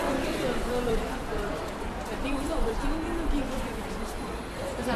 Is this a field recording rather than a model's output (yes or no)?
no